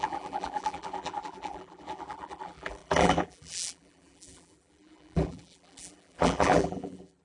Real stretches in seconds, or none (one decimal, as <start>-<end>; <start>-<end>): none